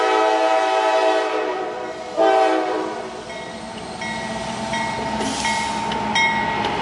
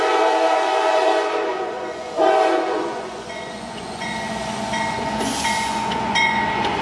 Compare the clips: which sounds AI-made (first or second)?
second